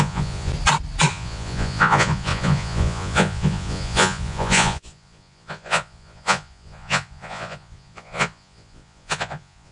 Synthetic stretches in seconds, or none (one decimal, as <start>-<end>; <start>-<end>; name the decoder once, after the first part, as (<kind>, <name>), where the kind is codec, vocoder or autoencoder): 0.0-0.5 (vocoder, Vocos); 1.1-9.7